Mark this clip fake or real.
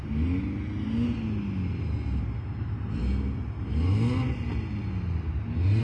real